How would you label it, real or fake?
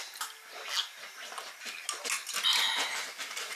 real